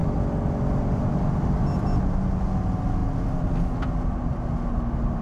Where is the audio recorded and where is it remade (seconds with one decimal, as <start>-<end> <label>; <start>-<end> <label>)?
0.0-2.0 remade; 2.0-3.0 recorded; 3.0-3.9 remade; 3.9-5.2 recorded